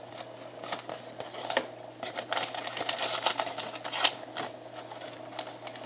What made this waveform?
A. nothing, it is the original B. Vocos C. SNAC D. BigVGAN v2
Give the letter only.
A